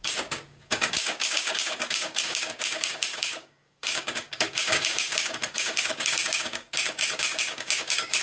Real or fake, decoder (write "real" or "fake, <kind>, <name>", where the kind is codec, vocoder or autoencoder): fake, codec, DAC